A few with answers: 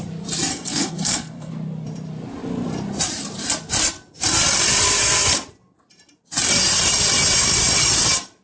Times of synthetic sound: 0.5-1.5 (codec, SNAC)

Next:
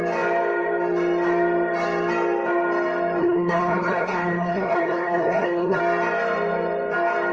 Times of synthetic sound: 3.2-5.8 (codec, SNAC)

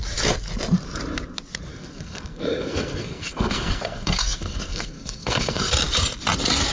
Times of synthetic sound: 1.7-5.7 (codec, SNAC)

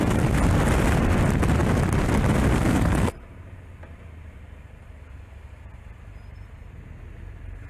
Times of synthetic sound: 2.5-3.1 (codec, SNAC)

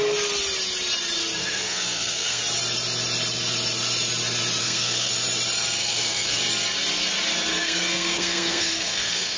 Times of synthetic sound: 1.4-2.4 (codec, SNAC); 4.6-5.1; 5.8-6.4; 7.5-9.4